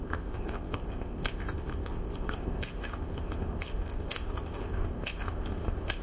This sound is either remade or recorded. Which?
remade